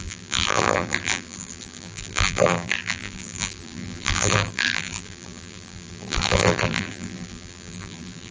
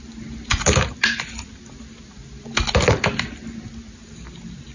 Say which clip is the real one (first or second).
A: second